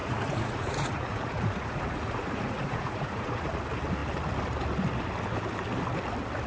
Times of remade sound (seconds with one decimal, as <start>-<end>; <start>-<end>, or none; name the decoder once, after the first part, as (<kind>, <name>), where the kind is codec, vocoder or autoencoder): 0.0-3.6 (vocoder, Vocos)